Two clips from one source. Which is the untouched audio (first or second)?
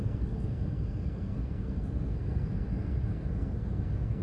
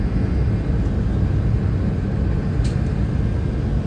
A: second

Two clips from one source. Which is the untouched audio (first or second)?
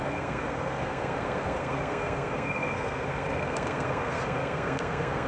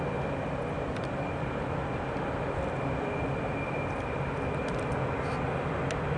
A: second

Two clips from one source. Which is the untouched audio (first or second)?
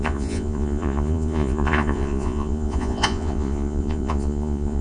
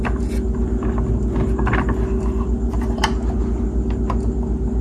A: second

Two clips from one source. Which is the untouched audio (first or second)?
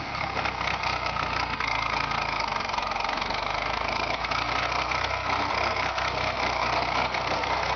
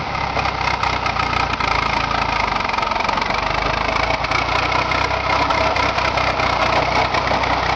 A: second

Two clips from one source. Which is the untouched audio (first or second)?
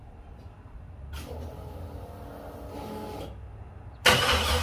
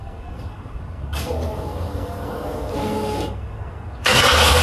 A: first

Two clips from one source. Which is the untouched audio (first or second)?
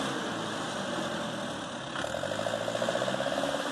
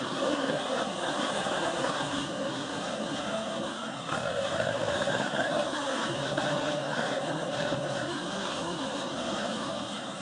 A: first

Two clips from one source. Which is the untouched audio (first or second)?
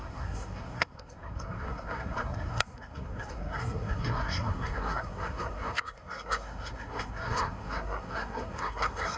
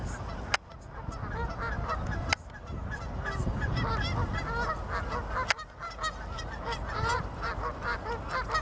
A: second